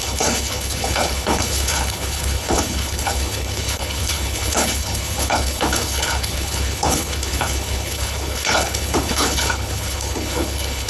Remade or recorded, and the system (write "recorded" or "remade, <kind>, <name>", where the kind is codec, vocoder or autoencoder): remade, codec, HILCodec